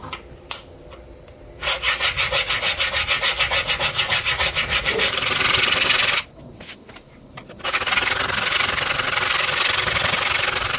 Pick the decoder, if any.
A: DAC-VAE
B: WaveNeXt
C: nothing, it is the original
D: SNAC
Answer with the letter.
C